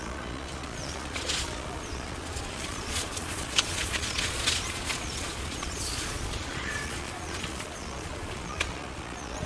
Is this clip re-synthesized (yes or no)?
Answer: yes